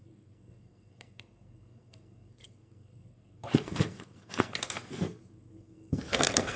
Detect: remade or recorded remade